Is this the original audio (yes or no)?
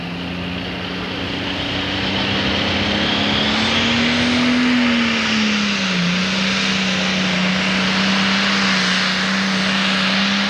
yes